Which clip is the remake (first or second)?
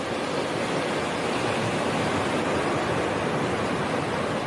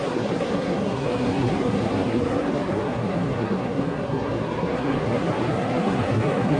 second